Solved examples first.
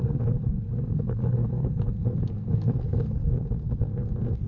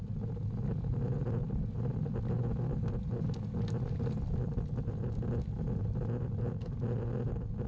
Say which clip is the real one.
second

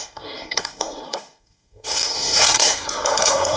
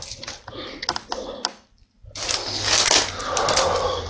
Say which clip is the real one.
second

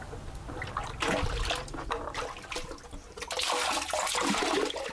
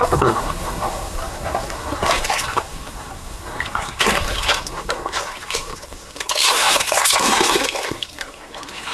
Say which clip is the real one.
first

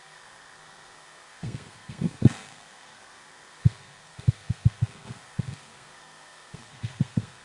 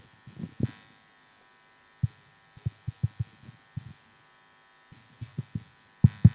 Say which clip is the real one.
second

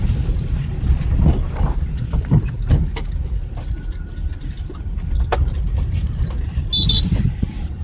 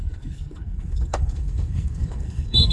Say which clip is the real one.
first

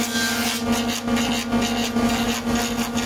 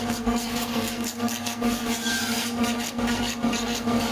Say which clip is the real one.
first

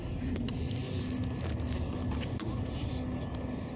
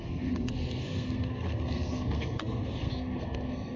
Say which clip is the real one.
first